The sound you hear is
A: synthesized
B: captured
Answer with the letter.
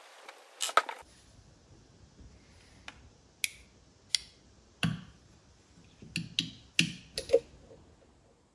B